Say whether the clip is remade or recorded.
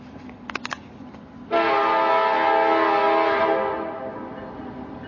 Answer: recorded